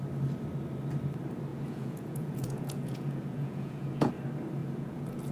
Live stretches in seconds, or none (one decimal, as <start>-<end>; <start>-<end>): 0.0-1.5; 4.1-4.6